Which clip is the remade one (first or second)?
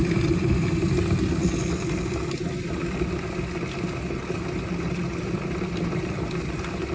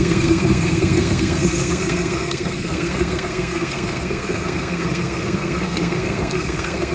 second